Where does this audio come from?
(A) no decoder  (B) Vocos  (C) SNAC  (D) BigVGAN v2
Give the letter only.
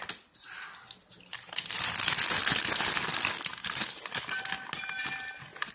A